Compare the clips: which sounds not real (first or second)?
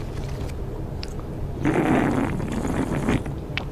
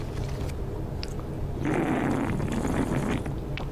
first